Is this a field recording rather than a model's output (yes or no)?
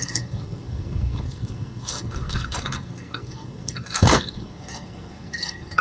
no